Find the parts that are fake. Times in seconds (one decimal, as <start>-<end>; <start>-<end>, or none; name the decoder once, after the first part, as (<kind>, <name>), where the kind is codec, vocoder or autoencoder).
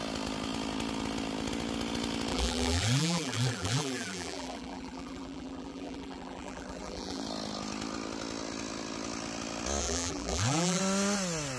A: 2.3-7.2 (vocoder, BigVGAN v2); 9.8-10.8